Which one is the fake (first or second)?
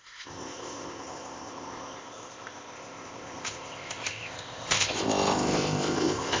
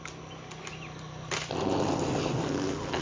first